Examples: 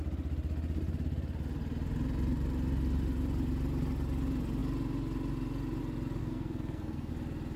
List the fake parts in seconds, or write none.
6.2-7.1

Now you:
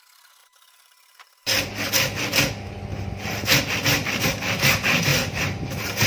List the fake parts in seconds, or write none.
0.4-1.9; 2.9-3.6; 5.1-6.1

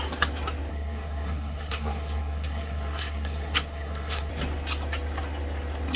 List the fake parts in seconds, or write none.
0.7-4.3

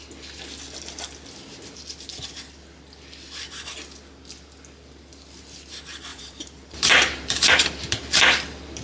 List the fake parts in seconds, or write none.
6.1-8.2